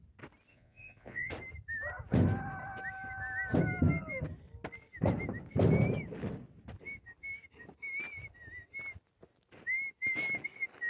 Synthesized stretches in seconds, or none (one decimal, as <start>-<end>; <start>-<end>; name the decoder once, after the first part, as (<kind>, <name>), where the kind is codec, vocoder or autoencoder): 0.5-1.3 (vocoder, Vocos)